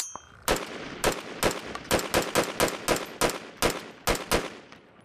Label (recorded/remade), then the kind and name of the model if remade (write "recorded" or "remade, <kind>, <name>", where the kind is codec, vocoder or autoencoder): recorded